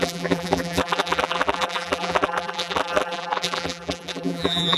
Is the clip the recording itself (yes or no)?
no